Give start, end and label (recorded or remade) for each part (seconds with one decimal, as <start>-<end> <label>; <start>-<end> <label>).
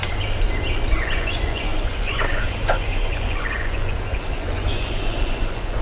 0.0-0.9 recorded; 0.9-5.8 remade